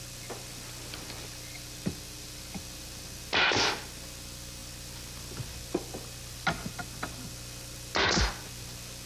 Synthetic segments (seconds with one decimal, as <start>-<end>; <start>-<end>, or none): none

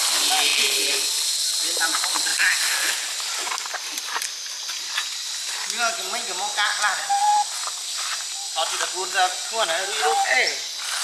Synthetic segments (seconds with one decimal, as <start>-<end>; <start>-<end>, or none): none